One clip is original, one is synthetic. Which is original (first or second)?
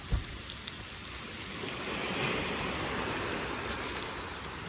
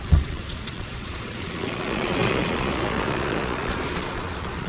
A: first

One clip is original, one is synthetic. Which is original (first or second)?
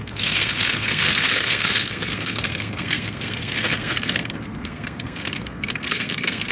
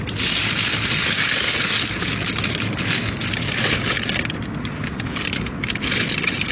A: second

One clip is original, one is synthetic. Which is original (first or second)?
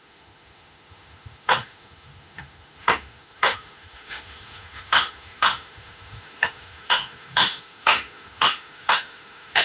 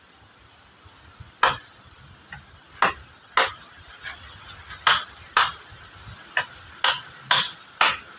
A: second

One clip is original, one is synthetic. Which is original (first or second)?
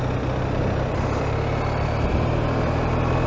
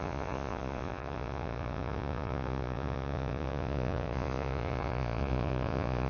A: first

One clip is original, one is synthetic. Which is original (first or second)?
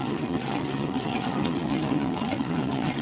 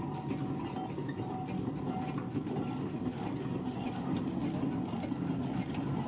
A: second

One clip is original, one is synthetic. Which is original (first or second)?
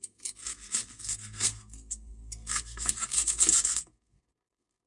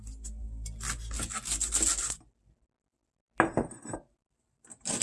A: second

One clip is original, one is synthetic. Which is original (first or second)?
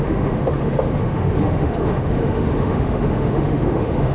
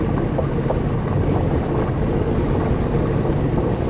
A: second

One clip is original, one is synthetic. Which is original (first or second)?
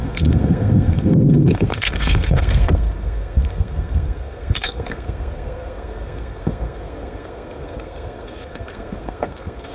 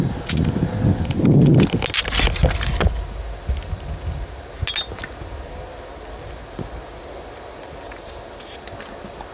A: second